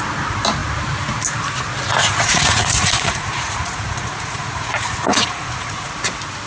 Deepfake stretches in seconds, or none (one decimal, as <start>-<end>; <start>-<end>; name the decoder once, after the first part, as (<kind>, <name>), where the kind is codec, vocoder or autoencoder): 2.0-5.9 (vocoder, Vocos)